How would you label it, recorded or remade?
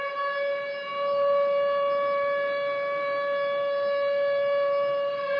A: recorded